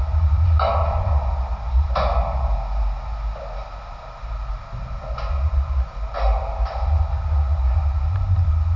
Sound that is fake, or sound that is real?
real